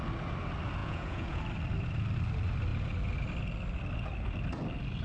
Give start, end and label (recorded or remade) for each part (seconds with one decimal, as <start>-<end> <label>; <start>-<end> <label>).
0.0-0.8 recorded; 0.8-1.4 remade; 1.4-5.0 recorded